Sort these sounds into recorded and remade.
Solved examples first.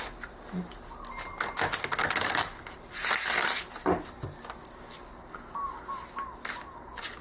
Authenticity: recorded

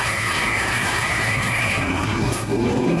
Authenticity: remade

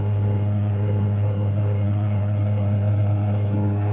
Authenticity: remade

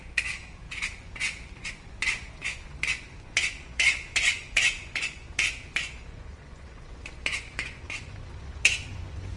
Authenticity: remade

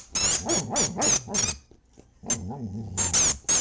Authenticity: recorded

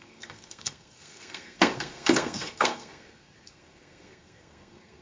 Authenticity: remade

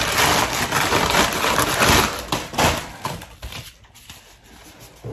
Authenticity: recorded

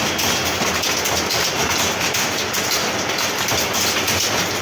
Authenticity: recorded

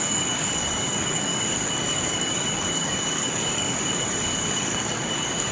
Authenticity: remade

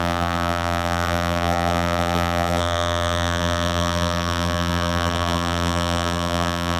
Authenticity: remade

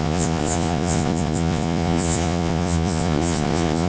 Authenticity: remade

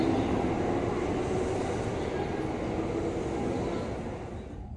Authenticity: recorded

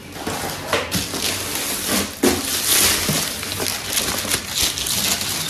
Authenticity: recorded